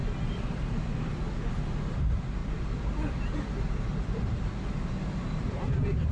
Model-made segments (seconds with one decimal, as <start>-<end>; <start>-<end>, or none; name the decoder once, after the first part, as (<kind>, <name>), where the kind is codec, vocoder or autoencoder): 1.9-6.1 (vocoder, BigVGAN v2)